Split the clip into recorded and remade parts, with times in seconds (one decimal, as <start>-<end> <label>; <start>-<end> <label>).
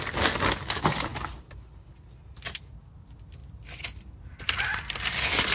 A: 0.0-3.4 recorded; 3.4-4.4 remade; 4.4-5.5 recorded